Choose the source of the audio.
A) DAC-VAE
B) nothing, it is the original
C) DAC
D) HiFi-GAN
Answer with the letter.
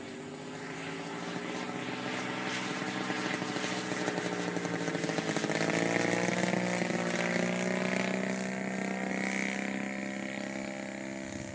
B